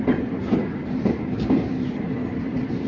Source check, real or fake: real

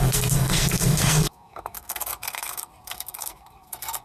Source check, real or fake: fake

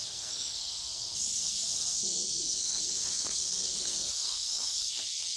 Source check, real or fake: fake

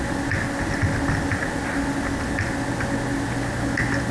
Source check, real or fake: real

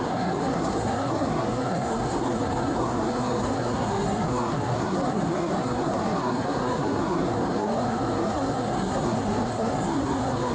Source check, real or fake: fake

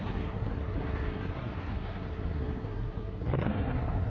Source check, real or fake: fake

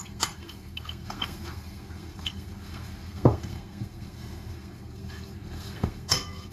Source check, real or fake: fake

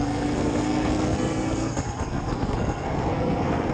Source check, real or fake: fake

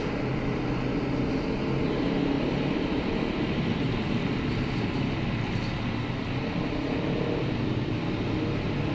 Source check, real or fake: real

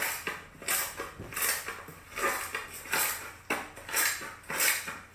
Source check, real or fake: real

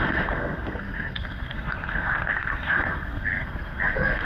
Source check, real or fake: fake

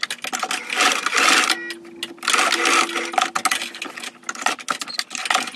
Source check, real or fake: real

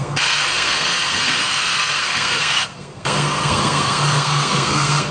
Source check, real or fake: fake